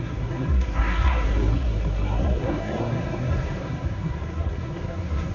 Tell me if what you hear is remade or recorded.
remade